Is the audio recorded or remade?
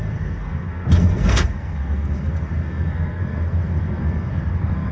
remade